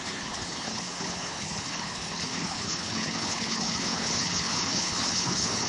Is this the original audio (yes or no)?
no